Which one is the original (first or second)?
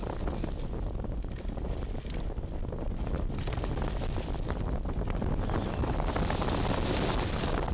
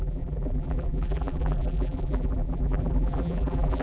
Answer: first